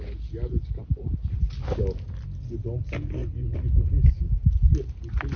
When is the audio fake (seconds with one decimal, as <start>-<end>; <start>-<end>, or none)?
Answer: none